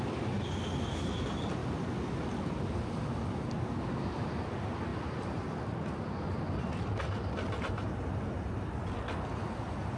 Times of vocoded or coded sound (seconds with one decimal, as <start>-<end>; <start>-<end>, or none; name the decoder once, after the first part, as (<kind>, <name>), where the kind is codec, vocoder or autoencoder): none